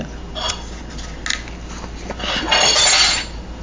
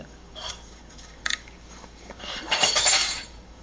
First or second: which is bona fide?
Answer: first